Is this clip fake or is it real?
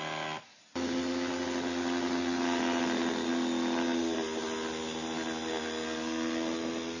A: real